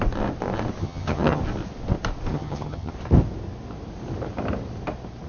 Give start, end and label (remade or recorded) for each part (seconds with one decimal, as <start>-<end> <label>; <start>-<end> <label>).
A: 0.0-0.8 recorded; 0.8-1.4 remade; 1.4-2.3 recorded; 2.3-2.9 remade; 2.9-5.3 recorded